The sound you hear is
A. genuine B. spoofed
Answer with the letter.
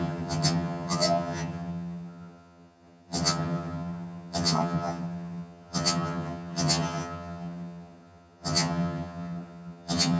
B